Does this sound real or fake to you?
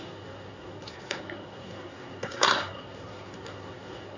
fake